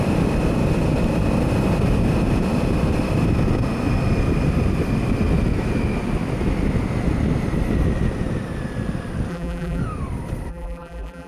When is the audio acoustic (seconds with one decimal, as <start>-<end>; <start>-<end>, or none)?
0.0-9.3; 9.8-10.5